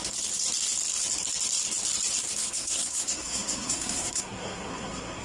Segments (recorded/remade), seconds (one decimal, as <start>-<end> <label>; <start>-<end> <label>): 0.0-2.4 recorded; 2.4-5.2 remade